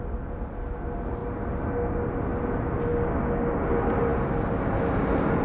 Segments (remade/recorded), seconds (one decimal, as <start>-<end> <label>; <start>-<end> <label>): 0.0-5.4 recorded